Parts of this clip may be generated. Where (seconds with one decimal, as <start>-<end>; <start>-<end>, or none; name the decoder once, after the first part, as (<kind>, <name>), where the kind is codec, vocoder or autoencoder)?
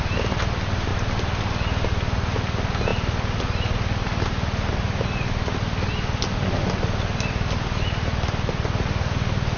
none